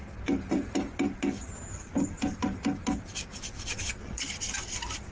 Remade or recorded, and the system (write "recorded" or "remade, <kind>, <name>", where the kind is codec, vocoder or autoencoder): recorded